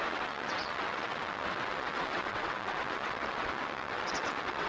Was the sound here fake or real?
fake